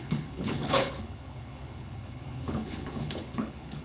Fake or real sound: fake